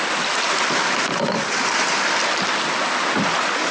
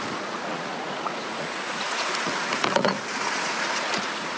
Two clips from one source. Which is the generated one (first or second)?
second